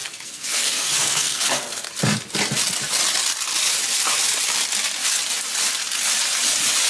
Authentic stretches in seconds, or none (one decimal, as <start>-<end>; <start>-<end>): 1.9-6.9